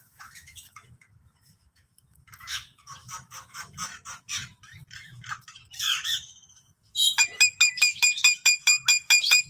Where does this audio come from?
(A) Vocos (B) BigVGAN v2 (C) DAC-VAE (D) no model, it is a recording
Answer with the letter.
C